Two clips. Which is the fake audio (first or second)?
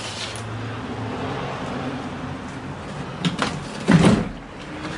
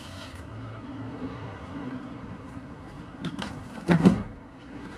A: second